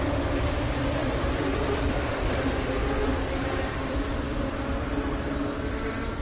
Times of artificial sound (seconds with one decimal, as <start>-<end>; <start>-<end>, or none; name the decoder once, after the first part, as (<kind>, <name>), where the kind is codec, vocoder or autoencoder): 1.0-3.1 (vocoder, BigVGAN v2); 3.8-5.0